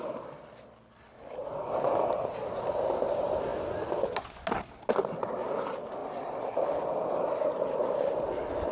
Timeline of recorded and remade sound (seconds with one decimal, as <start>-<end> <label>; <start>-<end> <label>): 0.0-1.4 recorded; 1.4-2.1 remade; 2.1-6.0 recorded; 6.0-8.7 remade